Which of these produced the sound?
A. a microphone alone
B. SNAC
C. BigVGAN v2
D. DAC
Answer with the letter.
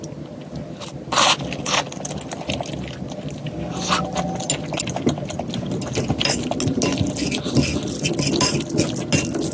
A